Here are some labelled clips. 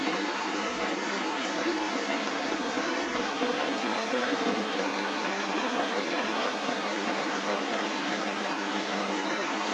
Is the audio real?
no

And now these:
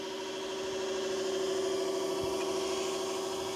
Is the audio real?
yes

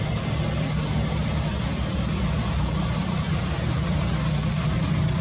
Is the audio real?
yes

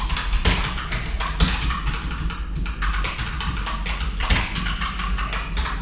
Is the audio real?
yes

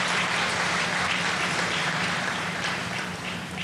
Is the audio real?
no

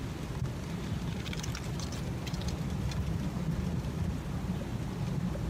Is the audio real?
yes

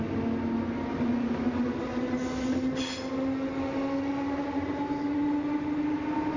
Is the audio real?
yes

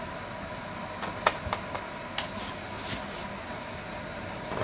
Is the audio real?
yes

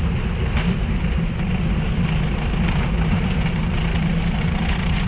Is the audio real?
no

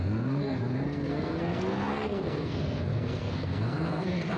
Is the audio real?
no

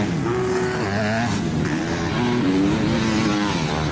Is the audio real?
yes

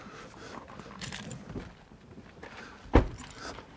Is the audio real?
yes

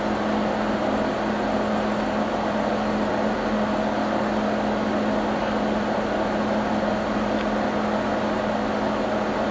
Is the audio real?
yes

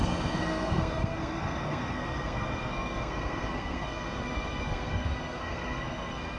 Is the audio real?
no